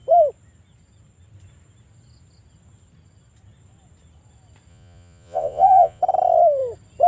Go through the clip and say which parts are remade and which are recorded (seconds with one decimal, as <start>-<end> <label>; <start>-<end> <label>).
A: 0.0-4.7 recorded; 4.7-6.0 remade; 6.0-7.1 recorded